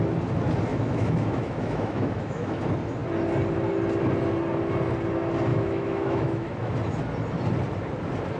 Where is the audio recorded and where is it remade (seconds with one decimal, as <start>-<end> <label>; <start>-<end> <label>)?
0.0-0.7 recorded; 0.7-2.6 remade; 2.6-5.5 recorded; 5.5-6.7 remade; 6.7-8.4 recorded